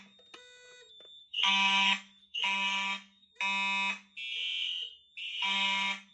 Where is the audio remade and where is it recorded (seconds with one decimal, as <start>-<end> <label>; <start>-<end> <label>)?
0.0-1.2 recorded; 1.2-3.3 remade; 3.3-5.2 recorded; 5.2-6.1 remade